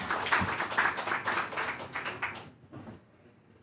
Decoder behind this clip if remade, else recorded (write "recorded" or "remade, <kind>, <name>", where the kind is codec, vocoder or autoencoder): recorded